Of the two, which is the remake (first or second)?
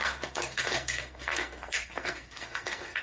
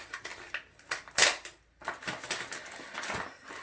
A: first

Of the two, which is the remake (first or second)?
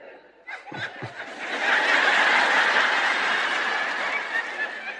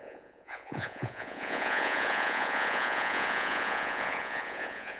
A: second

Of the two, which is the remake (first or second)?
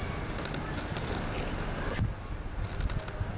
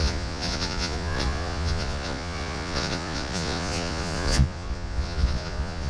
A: second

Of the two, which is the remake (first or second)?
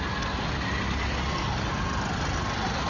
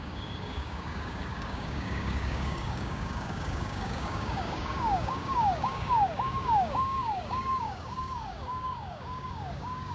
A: second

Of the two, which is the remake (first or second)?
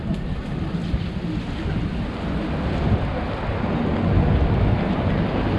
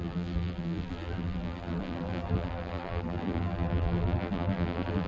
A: second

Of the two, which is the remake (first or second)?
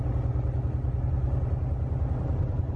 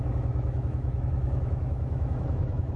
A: second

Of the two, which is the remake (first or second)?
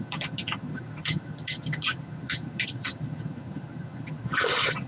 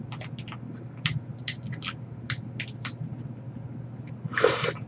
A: first